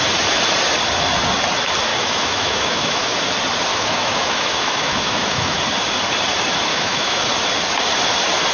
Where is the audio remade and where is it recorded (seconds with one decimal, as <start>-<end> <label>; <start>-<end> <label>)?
0.0-1.9 recorded; 1.9-3.0 remade; 3.0-3.7 recorded; 3.7-5.6 remade; 5.6-6.7 recorded; 6.7-7.2 remade; 7.2-8.5 recorded